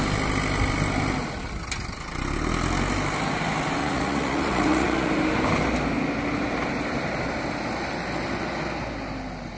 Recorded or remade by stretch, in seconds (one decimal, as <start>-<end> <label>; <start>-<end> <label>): 0.0-3.8 recorded; 3.8-5.1 remade; 5.1-9.6 recorded